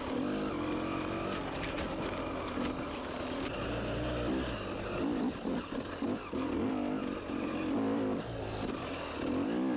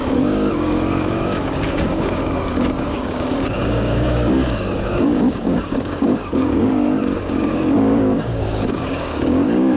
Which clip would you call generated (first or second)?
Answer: second